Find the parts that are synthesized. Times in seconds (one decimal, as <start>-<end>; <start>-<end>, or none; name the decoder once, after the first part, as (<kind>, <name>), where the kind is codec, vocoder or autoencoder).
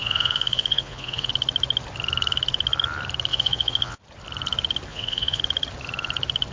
0.0-1.3 (vocoder, Vocos); 3.3-4.0; 4.9-5.4